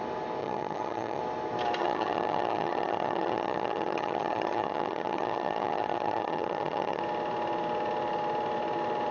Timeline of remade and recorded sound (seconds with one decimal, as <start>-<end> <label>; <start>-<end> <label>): 0.0-0.4 recorded; 0.4-1.2 remade; 1.2-1.8 recorded; 1.8-7.0 remade; 7.0-9.1 recorded